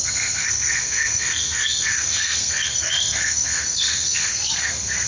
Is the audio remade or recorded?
remade